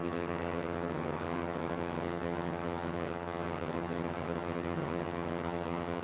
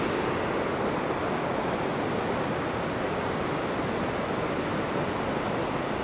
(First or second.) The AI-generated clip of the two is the first